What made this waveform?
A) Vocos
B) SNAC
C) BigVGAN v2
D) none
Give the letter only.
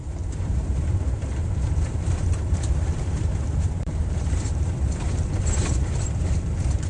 C